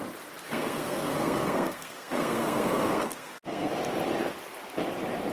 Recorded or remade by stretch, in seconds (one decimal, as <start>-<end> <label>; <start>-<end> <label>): 0.0-0.5 recorded; 0.5-3.7 remade; 3.7-5.3 recorded